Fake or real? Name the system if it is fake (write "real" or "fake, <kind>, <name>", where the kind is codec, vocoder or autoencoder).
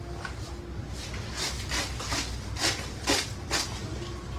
fake, vocoder, BigVGAN v2